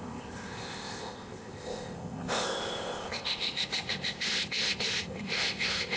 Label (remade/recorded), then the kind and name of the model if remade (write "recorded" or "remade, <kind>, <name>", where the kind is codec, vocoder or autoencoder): remade, codec, ZipCodec